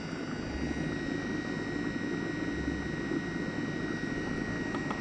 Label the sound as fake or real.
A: real